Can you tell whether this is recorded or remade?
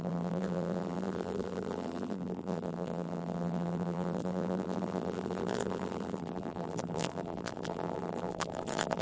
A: remade